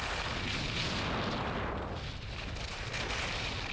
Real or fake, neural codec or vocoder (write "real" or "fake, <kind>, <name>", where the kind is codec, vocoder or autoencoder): real